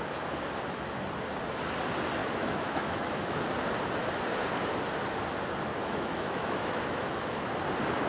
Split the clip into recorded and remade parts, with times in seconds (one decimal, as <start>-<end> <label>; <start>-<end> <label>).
0.0-2.2 recorded; 2.2-3.4 remade; 3.4-5.7 recorded; 5.7-7.6 remade; 7.6-8.1 recorded